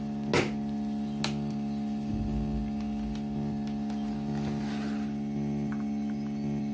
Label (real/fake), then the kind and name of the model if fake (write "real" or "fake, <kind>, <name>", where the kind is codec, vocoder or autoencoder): real